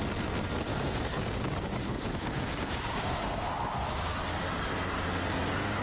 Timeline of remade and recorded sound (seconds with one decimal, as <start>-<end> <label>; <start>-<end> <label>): 0.0-0.7 recorded; 0.7-4.2 remade; 4.2-5.8 recorded